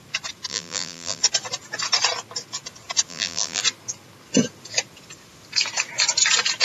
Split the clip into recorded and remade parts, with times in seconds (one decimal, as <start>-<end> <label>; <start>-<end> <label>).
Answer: 0.0-0.5 recorded; 0.5-1.2 remade; 1.2-3.1 recorded; 3.1-3.6 remade; 3.6-6.6 recorded